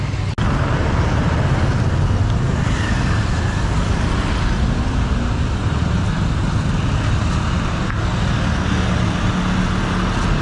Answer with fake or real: real